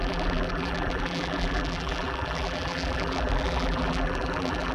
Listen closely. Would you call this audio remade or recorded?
remade